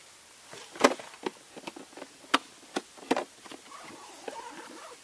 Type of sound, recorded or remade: recorded